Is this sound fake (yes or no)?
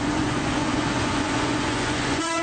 yes